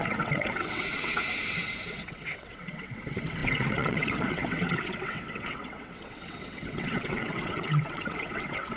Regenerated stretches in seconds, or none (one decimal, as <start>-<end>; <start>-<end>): 0.0-8.8

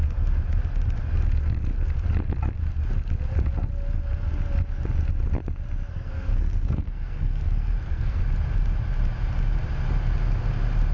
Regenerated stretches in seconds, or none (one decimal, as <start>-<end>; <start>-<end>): 5.9-8.2

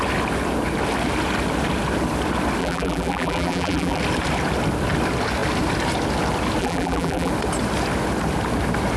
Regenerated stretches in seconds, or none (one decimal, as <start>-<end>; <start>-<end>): 2.6-4.0; 6.6-7.3